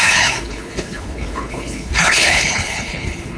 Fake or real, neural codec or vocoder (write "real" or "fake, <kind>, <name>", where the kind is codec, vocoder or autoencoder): fake, codec, HILCodec